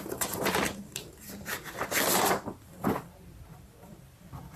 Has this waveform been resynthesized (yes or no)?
yes